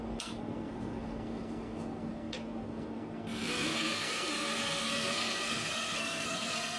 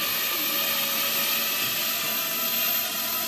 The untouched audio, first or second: second